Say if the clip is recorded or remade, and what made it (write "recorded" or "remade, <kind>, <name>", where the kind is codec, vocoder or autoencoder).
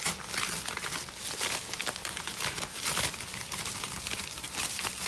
recorded